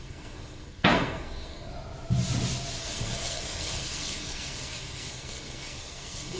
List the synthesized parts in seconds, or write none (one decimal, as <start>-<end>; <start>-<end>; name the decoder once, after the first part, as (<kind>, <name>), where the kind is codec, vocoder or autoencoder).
0.0-1.7 (codec, SNAC); 2.8-6.4